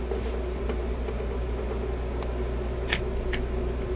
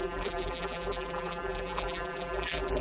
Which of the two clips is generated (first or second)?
second